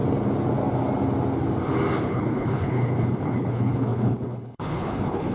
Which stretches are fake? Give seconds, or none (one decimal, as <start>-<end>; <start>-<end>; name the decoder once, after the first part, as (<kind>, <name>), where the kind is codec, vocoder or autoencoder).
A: 2.0-5.3 (codec, HILCodec)